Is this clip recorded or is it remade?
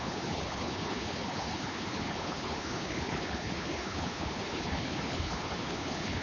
remade